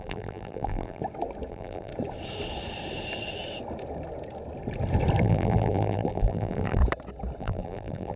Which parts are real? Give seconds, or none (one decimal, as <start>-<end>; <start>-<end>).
1.0-1.5; 1.9-5.2; 6.8-7.4